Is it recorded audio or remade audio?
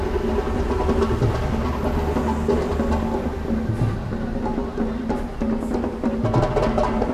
recorded